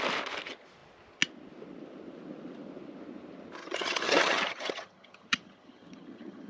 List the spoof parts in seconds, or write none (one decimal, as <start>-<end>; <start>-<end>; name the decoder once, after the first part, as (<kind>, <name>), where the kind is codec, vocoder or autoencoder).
3.6-6.5 (vocoder, HiFi-GAN)